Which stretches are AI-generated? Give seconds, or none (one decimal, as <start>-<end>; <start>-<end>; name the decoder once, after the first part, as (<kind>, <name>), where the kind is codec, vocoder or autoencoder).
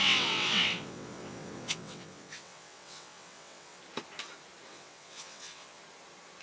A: 0.0-3.8 (vocoder, WaveNeXt); 4.7-5.8